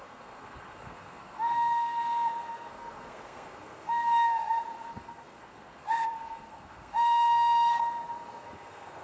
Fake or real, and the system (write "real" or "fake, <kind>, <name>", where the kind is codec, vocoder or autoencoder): fake, codec, SNAC